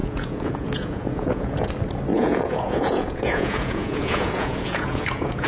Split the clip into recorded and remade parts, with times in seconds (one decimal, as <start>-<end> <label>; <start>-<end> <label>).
0.0-1.7 remade; 1.7-2.1 recorded; 2.1-5.5 remade